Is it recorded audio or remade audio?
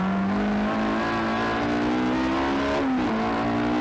recorded